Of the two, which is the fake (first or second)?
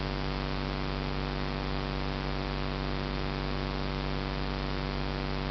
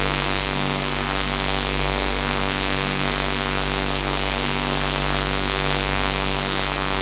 second